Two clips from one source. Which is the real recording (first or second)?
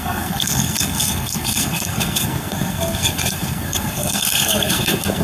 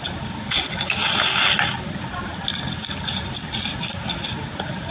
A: second